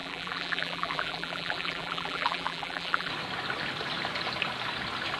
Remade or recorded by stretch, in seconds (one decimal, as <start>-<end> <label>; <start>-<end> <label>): 0.0-3.1 remade; 3.1-5.2 recorded

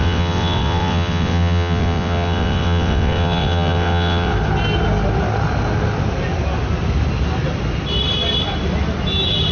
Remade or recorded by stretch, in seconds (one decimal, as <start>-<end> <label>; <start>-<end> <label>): 0.0-4.3 remade; 4.3-9.5 recorded

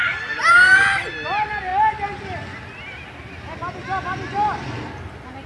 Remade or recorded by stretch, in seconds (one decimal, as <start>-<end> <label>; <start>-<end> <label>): 0.0-5.5 recorded